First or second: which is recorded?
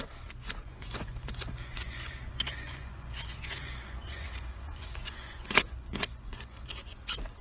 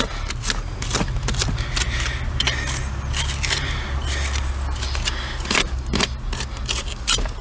second